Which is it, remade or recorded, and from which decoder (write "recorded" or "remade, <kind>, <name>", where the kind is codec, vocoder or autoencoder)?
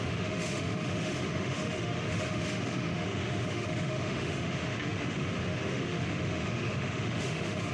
remade, autoencoder, DAC-VAE